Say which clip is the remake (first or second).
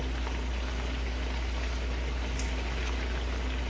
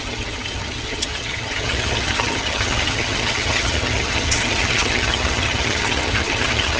second